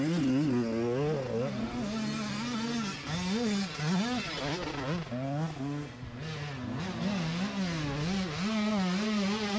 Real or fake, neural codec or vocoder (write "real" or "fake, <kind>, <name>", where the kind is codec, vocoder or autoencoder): real